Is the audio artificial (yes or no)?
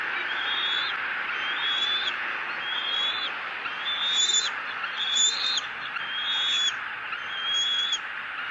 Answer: no